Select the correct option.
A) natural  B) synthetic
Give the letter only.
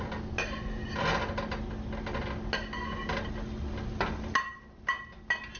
A